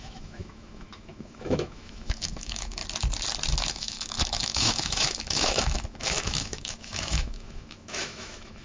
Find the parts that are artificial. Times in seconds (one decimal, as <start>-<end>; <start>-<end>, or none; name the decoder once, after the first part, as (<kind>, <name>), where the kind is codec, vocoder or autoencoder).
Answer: 0.0-2.8 (autoencoder, DAC-VAE); 3.7-8.6